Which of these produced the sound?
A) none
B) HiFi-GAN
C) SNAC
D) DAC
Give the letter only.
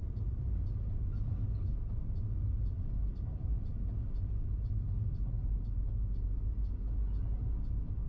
A